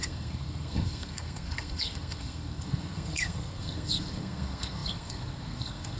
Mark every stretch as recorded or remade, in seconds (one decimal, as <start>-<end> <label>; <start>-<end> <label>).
0.0-6.0 remade